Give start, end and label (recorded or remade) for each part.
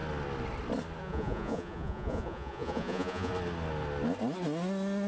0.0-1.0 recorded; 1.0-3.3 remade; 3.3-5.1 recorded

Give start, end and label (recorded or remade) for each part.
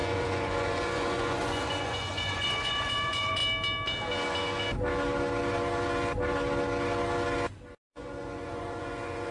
0.0-3.4 remade; 3.4-7.9 recorded; 7.9-9.3 remade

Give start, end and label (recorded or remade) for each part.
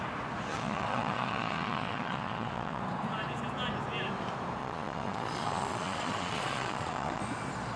0.0-0.5 recorded; 0.5-2.8 remade; 2.8-4.6 recorded; 4.6-7.2 remade; 7.2-7.8 recorded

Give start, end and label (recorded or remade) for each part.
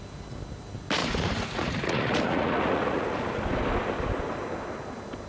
0.0-1.0 recorded; 1.0-3.4 remade; 3.4-5.3 recorded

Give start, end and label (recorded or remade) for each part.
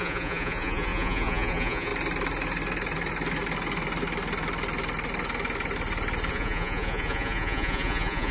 0.0-1.9 remade; 1.9-6.3 recorded; 6.3-8.3 remade